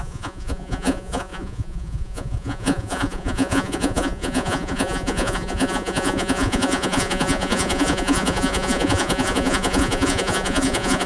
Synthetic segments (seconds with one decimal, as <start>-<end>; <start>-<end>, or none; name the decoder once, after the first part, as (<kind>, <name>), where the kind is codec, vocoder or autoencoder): 0.0-11.1 (vocoder, Vocos)